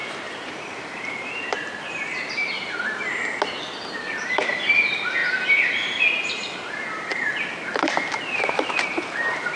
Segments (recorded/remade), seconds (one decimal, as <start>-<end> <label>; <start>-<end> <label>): 0.0-3.3 remade; 3.3-4.2 recorded; 4.2-9.6 remade